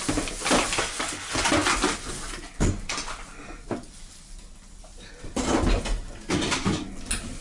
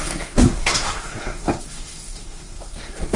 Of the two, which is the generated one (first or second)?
second